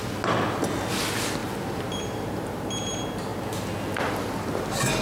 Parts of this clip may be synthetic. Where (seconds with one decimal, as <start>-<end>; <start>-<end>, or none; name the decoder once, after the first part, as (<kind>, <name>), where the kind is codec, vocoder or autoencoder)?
1.4-2.5 (vocoder, BigVGAN v2)